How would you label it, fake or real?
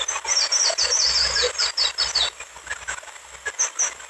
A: real